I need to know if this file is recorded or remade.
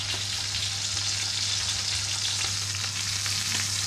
recorded